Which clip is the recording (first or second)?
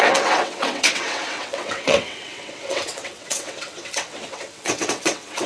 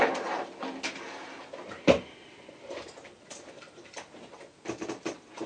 second